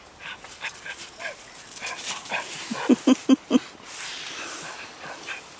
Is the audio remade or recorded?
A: recorded